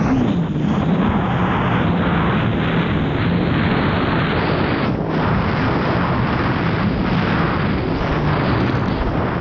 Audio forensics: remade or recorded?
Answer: recorded